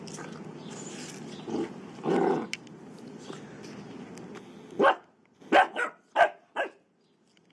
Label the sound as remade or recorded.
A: recorded